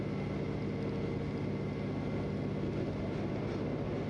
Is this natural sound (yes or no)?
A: yes